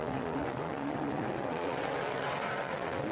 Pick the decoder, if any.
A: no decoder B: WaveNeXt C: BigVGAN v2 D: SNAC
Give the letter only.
B